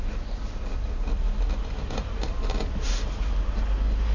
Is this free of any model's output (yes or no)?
yes